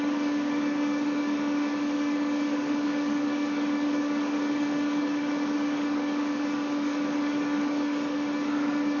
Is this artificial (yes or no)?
yes